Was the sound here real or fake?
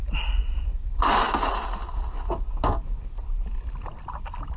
real